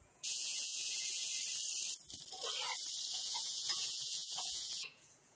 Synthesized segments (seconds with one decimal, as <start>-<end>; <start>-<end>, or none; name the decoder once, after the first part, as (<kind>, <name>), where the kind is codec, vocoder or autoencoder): 0.0-1.3 (vocoder, Vocos); 3.1-5.4